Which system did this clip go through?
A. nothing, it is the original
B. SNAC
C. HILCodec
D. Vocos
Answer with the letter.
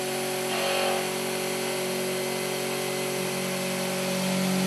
A